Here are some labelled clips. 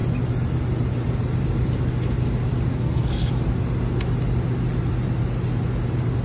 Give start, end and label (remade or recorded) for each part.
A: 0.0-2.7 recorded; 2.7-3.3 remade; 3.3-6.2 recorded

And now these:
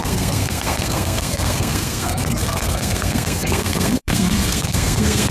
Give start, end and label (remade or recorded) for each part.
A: 0.0-5.3 remade

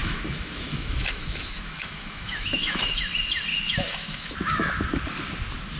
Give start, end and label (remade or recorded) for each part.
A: 0.0-3.0 remade; 3.0-3.5 recorded; 3.5-4.3 remade; 4.3-5.8 recorded

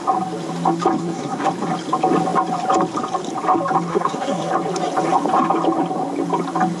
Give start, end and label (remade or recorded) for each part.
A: 0.0-1.0 recorded; 1.0-1.5 remade; 1.5-3.9 recorded; 3.9-4.5 remade; 4.5-6.8 recorded

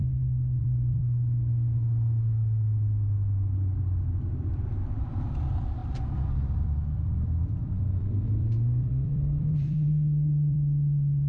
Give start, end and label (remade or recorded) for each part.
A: 0.0-0.6 recorded; 0.6-1.0 remade; 1.0-5.0 recorded; 5.0-11.3 remade

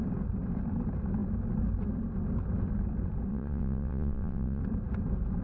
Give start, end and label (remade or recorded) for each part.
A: 0.0-3.3 recorded; 3.3-4.6 remade; 4.6-5.4 recorded

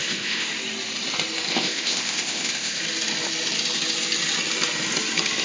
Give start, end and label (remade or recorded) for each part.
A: 0.0-0.5 remade; 0.5-1.5 recorded; 1.5-2.8 remade; 2.8-5.4 recorded

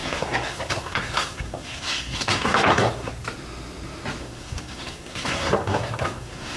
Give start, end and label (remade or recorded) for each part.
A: 0.0-3.1 remade; 3.1-4.2 recorded; 4.2-6.6 remade